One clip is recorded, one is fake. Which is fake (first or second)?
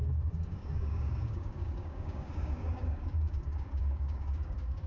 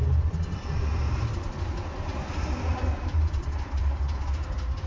first